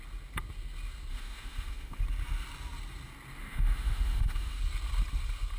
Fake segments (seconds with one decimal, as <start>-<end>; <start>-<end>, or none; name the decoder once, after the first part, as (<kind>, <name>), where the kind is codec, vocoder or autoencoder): 1.1-2.0 (autoencoder, DAC-VAE); 3.4-4.6